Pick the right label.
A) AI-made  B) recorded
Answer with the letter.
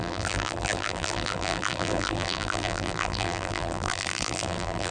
A